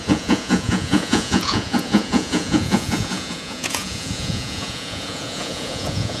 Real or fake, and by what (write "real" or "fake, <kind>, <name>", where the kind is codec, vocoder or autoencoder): fake, vocoder, Vocos